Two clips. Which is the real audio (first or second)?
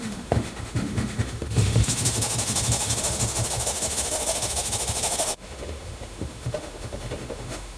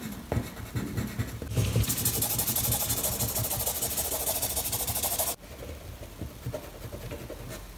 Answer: second